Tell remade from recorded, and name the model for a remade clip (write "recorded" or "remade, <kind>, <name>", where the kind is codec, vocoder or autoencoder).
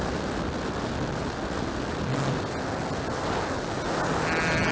recorded